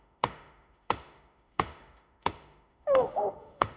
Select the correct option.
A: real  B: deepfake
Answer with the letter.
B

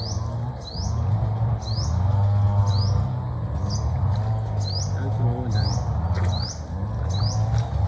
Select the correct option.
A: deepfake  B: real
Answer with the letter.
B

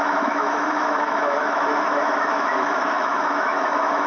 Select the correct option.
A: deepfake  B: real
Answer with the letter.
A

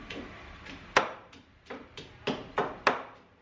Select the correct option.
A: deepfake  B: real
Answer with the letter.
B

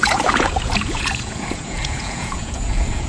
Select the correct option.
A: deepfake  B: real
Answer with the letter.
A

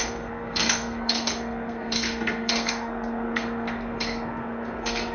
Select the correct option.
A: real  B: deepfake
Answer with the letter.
B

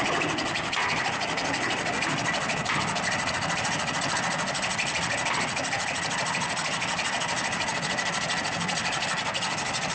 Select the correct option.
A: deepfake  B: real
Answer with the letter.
B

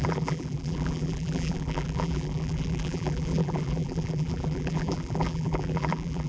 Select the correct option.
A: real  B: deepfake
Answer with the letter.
B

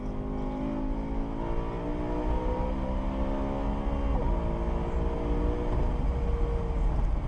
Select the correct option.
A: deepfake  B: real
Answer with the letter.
B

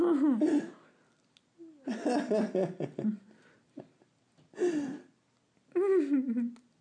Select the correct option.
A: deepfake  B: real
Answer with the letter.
B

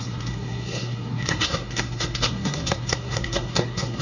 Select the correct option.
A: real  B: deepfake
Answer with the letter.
B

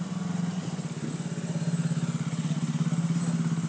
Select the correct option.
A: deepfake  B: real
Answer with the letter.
B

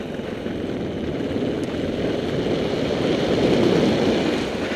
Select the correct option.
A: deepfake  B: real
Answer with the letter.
B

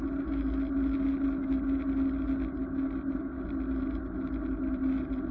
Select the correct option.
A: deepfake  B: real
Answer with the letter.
B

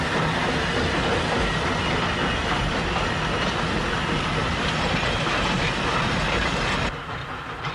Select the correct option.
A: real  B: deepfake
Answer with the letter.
A